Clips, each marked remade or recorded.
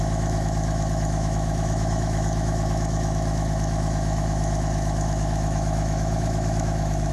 remade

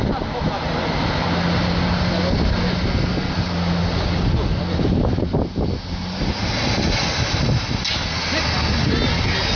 recorded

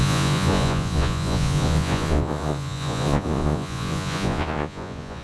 remade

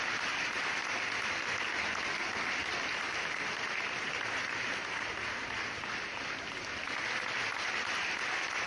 recorded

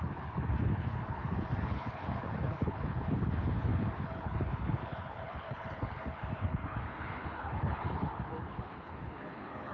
remade